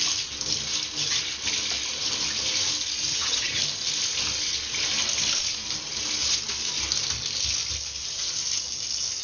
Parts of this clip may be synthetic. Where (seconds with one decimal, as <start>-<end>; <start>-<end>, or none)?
3.1-3.6